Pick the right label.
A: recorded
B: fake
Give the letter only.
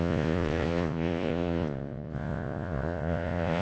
B